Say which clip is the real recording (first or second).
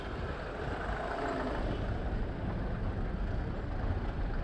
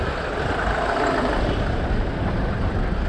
first